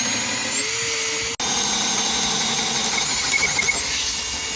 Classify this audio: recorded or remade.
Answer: recorded